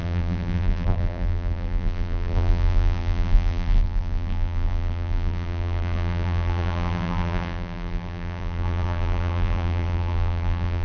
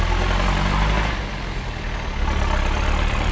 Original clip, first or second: second